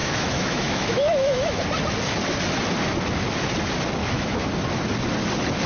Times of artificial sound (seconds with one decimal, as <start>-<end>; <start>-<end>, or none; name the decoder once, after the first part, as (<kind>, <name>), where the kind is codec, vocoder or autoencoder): 0.0-1.6 (autoencoder, DAC-VAE); 4.0-4.5